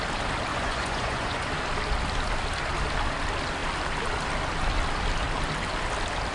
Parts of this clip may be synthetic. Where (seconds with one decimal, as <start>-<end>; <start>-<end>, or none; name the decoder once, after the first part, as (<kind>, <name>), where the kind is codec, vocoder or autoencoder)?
0.5-1.5 (vocoder, Vocos)